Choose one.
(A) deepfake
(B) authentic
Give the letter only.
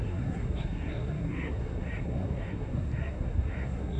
A